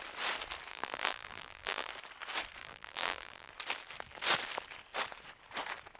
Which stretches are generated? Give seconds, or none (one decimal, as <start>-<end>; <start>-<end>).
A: 0.7-1.9; 2.6-3.5